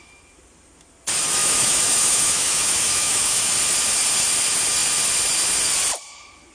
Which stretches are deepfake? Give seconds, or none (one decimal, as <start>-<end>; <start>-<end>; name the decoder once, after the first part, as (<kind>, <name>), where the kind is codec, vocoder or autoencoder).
1.4-3.5 (autoencoder, DAC-VAE)